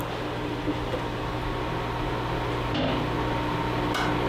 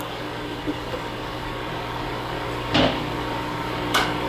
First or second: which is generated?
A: second